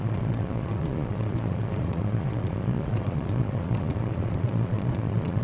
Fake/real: fake